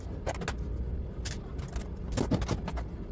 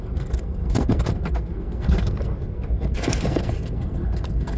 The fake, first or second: second